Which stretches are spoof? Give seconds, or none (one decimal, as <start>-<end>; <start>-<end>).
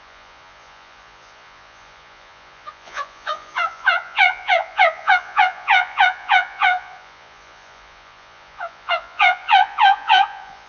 0.0-10.7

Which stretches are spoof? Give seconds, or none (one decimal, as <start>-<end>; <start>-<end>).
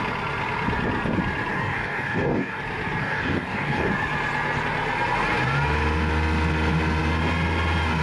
1.5-2.6; 3.0-3.9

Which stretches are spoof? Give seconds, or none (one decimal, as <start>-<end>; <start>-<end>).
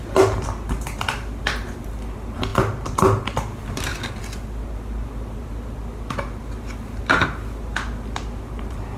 none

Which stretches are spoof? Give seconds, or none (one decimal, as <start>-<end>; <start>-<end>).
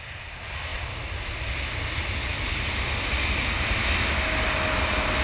none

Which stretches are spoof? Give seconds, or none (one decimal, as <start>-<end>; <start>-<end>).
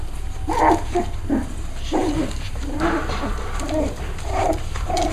2.0-5.1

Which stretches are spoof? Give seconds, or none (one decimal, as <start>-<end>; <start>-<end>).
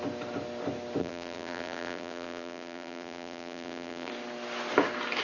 1.0-4.1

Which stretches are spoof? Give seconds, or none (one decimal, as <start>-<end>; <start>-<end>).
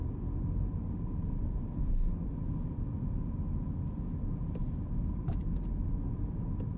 none